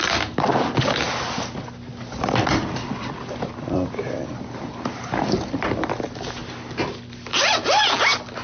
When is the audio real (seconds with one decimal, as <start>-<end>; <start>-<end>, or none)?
0.0-8.4